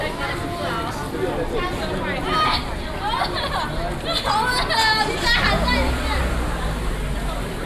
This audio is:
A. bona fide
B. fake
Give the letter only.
A